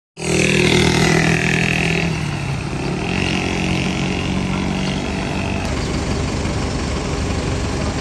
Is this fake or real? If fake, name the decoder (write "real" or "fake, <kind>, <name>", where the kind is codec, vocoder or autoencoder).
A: real